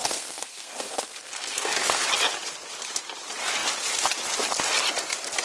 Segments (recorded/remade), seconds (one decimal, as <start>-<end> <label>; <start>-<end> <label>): 0.0-2.0 remade; 2.0-5.4 recorded